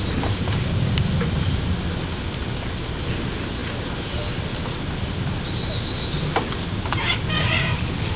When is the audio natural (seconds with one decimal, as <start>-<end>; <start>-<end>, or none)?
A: 0.0-8.2